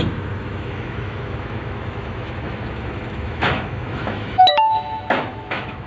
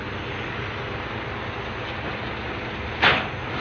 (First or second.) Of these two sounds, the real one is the second